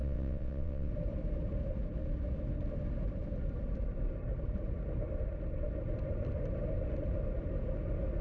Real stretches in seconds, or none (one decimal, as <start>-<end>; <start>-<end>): 0.9-8.2